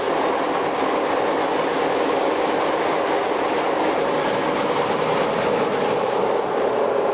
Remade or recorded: recorded